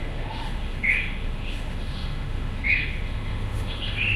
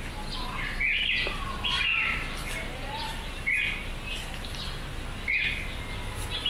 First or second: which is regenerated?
first